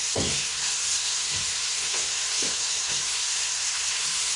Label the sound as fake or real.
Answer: fake